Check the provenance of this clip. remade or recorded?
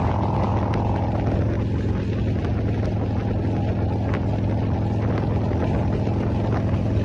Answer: recorded